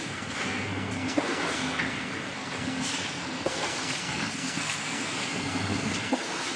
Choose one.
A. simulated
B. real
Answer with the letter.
A